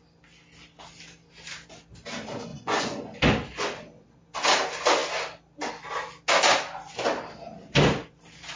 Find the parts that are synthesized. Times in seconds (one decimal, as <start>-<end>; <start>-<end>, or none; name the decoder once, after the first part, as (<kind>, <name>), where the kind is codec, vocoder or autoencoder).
2.5-3.0 (vocoder, Vocos)